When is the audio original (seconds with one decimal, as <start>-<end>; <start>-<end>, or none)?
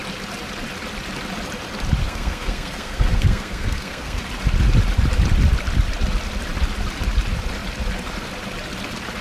0.0-2.0; 4.2-9.2